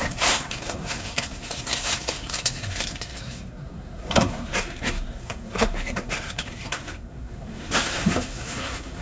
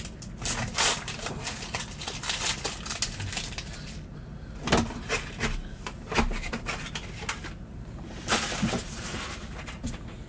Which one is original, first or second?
second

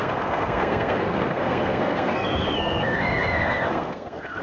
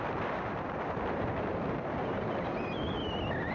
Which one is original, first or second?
second